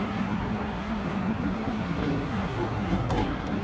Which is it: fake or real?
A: fake